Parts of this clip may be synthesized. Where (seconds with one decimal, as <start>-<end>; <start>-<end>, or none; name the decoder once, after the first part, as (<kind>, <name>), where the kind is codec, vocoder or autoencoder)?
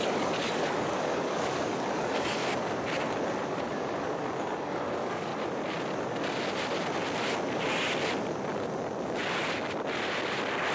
0.0-2.4 (codec, DAC); 3.4-5.3